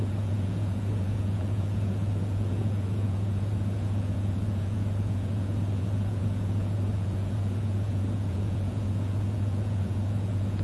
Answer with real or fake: fake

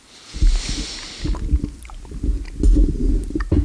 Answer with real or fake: real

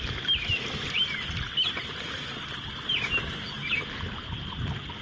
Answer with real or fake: real